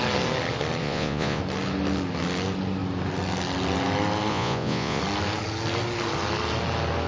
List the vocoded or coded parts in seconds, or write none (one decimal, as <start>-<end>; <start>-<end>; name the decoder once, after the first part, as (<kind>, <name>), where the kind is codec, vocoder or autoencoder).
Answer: 0.8-1.4 (vocoder, Vocos); 4.3-5.0